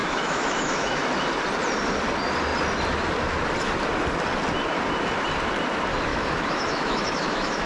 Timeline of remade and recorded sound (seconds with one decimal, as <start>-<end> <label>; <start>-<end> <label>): 0.0-1.0 remade; 1.0-6.1 recorded; 6.1-7.7 remade